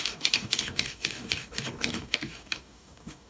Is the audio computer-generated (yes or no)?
yes